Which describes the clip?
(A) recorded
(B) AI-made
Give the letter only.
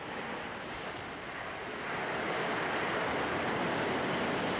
A